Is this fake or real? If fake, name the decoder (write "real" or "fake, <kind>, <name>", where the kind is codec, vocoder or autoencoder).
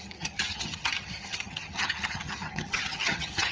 fake, vocoder, HiFi-GAN